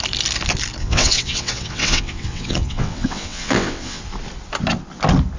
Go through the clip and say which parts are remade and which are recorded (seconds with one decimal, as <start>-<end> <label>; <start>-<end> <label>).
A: 0.0-0.8 recorded; 0.8-4.0 remade; 4.0-5.4 recorded